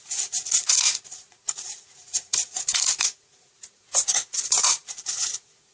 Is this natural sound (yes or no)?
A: no